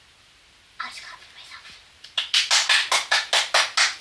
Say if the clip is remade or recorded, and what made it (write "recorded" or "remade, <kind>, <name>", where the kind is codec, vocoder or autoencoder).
recorded